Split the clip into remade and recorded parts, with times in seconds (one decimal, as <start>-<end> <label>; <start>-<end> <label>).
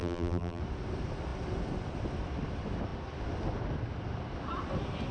0.0-0.6 remade; 0.6-5.1 recorded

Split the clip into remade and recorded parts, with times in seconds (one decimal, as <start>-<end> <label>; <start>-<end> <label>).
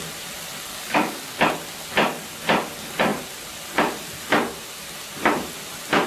0.0-0.7 recorded; 0.7-1.4 remade; 1.4-6.1 recorded